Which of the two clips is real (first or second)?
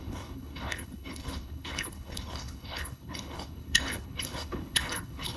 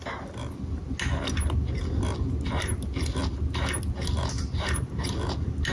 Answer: second